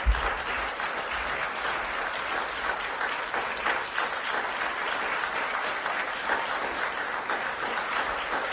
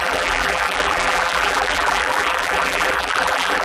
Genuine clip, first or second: first